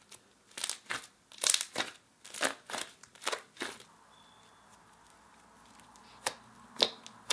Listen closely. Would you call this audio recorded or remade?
recorded